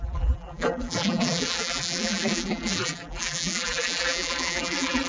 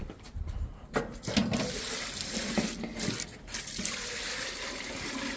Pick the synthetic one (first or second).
first